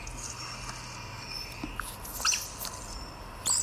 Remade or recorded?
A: recorded